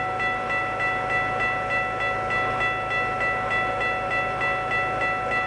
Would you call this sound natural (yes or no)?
yes